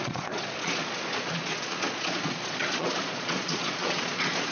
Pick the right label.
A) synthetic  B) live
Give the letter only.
A